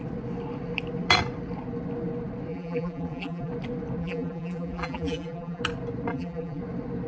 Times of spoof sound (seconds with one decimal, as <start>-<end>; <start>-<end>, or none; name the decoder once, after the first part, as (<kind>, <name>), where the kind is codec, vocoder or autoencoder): 2.5-3.5 (vocoder, BigVGAN v2); 4.0-5.6; 6.1-6.6